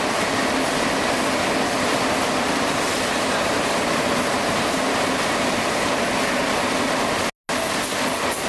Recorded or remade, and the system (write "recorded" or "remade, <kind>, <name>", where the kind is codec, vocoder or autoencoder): recorded